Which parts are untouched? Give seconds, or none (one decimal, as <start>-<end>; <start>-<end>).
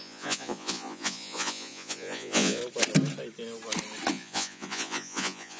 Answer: 2.6-4.1